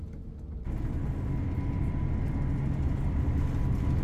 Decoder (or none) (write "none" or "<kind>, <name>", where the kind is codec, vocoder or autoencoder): none